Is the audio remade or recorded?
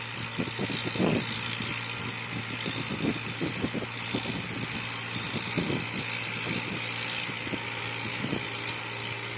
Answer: recorded